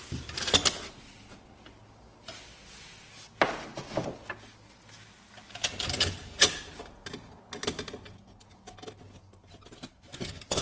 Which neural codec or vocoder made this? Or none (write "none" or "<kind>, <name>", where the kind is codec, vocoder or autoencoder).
none